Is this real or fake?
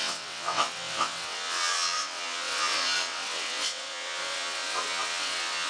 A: fake